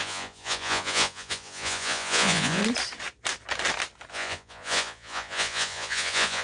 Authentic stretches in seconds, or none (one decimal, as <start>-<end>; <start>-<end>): 2.6-4.1